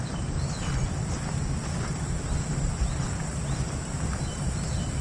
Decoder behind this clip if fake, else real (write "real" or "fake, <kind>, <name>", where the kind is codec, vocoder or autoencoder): real